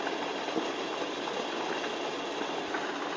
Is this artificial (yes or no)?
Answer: no